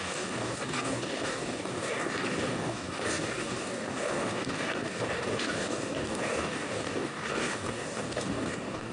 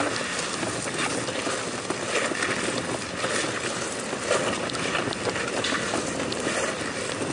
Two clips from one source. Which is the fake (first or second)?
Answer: first